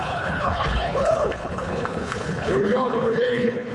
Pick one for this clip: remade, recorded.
remade